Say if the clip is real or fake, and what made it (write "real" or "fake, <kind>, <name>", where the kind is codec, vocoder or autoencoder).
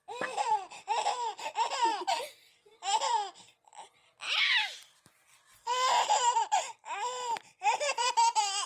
fake, vocoder, BigVGAN v2